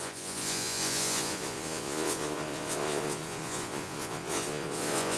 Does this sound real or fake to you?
fake